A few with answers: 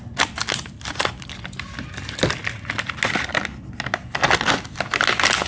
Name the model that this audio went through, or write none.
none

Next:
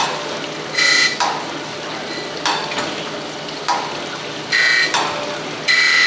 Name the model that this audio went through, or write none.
none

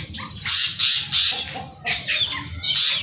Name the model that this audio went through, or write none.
none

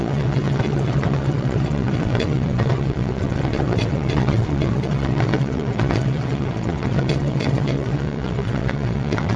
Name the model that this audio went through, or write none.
vocoder, WaveNeXt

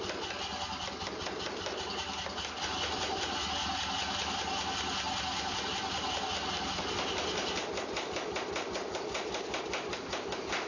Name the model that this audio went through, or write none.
none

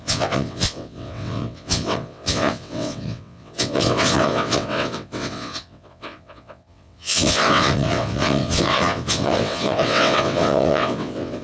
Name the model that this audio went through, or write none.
vocoder, WaveNeXt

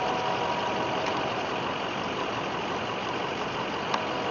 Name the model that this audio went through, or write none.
none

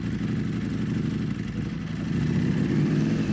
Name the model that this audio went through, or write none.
none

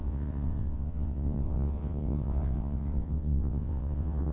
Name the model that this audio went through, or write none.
vocoder, WaveNeXt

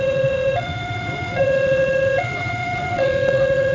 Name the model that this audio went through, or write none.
vocoder, WaveNeXt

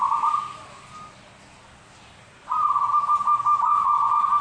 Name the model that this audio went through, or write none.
none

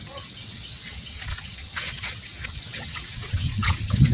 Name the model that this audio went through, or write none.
vocoder, WaveNeXt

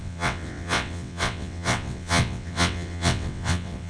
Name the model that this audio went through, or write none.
vocoder, WaveNeXt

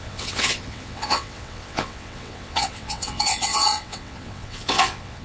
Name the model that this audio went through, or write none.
vocoder, WaveNeXt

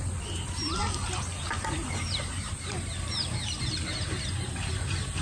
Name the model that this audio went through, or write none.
none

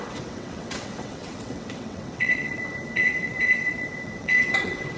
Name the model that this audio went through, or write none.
vocoder, WaveNeXt